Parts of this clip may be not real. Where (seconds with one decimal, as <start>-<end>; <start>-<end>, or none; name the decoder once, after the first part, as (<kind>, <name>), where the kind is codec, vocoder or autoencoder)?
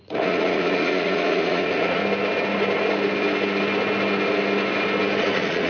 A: 0.0-2.0 (vocoder, Vocos); 5.2-5.7